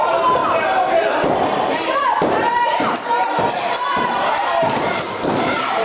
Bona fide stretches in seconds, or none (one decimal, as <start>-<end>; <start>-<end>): none